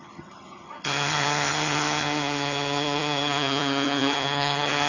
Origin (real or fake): fake